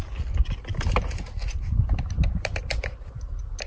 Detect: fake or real real